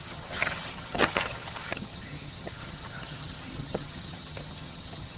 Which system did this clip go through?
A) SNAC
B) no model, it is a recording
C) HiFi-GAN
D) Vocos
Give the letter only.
C